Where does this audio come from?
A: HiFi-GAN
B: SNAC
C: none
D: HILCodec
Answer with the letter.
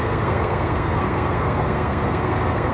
B